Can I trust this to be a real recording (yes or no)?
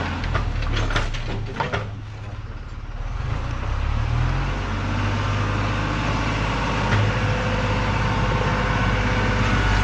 yes